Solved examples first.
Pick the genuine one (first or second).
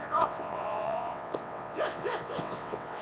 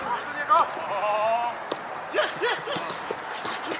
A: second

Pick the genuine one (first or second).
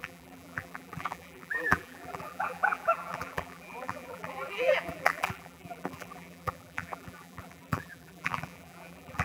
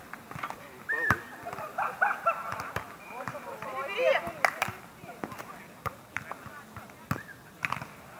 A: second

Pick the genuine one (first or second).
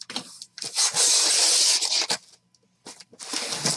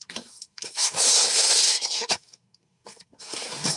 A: first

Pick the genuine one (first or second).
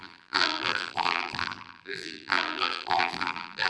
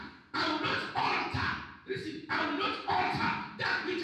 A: second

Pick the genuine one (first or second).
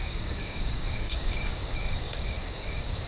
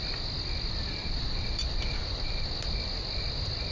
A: second